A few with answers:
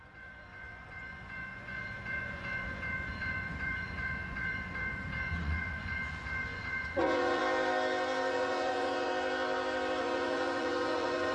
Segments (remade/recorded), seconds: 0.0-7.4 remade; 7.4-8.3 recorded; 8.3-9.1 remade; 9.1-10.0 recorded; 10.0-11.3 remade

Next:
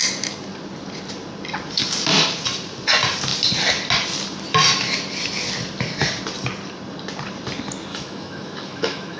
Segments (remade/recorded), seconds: 0.0-7.9 recorded; 7.9-9.2 remade

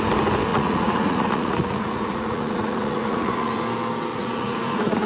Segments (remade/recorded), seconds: 0.0-0.5 recorded; 0.5-3.6 remade; 3.6-4.1 recorded; 4.1-5.1 remade

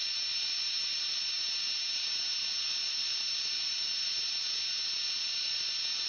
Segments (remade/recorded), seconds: 0.0-6.1 recorded

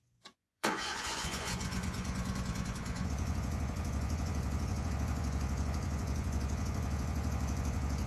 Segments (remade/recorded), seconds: 0.0-8.1 remade

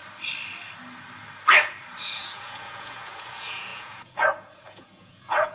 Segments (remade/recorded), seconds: 0.0-2.0 recorded; 2.0-5.5 remade

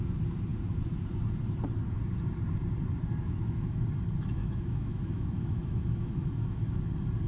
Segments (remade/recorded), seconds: 0.0-3.2 recorded; 3.2-3.8 remade; 3.8-4.4 recorded; 4.4-6.8 remade; 6.8-7.3 recorded

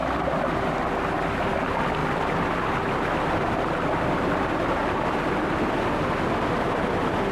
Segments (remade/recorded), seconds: 0.0-7.3 recorded